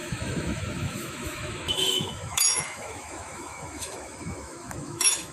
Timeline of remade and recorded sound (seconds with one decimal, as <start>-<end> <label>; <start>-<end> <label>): 0.0-5.3 remade